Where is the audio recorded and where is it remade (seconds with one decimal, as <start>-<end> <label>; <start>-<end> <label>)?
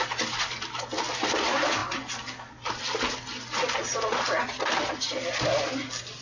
0.0-6.2 recorded